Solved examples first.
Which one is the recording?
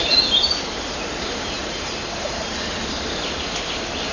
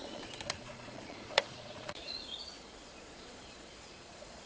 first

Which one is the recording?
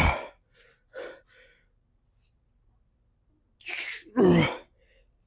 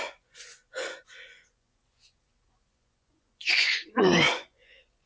first